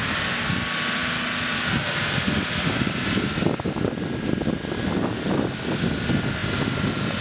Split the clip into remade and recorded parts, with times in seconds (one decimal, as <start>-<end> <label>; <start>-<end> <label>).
0.0-7.2 recorded